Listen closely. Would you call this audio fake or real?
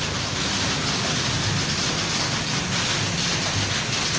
real